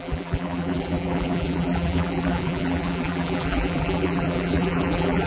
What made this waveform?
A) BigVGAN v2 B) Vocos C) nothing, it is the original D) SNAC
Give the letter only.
A